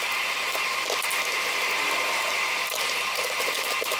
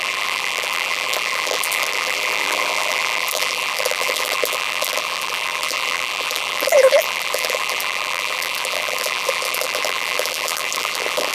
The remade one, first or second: second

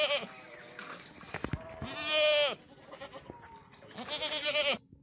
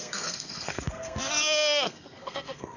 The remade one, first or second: second